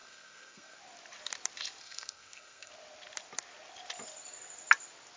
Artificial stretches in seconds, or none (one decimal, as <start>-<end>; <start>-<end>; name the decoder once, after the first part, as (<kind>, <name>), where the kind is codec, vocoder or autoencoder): 0.0-0.8 (codec, SNAC); 1.8-2.7